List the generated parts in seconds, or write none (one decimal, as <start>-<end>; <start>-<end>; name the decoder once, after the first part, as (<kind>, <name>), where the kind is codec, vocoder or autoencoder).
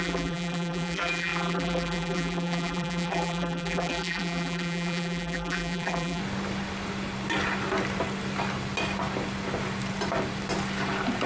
0.0-6.2 (vocoder, BigVGAN v2)